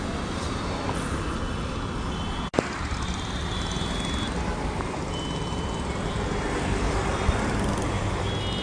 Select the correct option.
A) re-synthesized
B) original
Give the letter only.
B